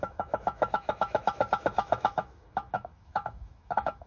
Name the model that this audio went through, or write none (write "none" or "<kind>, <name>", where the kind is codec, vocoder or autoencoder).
autoencoder, DAC-VAE